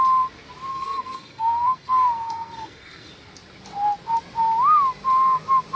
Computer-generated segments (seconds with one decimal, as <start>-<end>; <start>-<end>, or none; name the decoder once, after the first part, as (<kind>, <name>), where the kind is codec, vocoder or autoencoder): 0.7-3.1 (codec, SNAC)